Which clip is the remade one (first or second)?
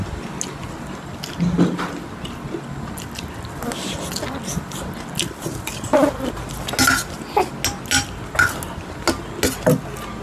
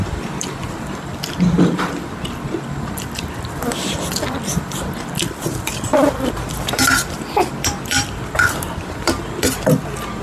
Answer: second